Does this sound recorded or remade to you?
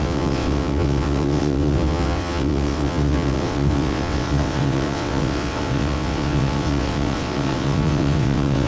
remade